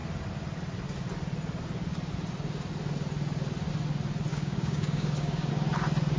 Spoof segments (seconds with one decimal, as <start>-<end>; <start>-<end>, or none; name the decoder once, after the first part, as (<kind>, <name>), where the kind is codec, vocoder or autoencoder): 4.3-5.5 (codec, DAC)